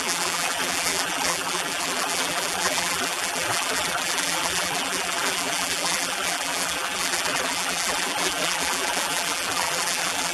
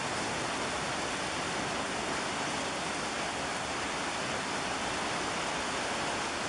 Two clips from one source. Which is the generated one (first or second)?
first